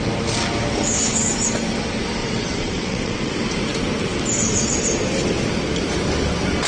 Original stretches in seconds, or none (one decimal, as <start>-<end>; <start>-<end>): 0.0-2.2; 3.3-6.7